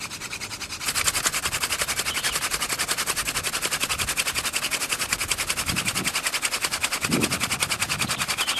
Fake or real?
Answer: real